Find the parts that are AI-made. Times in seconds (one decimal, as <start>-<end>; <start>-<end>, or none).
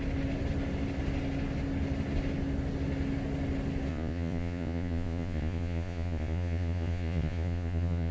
3.9-8.1